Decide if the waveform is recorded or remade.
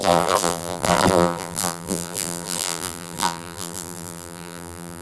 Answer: remade